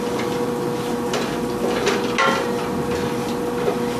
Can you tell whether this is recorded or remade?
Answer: recorded